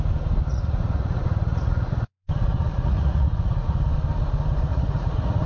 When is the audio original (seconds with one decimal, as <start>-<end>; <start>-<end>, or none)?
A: 0.0-0.5; 3.8-4.7